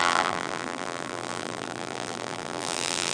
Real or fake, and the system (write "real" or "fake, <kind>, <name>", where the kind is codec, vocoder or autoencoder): fake, vocoder, BigVGAN v2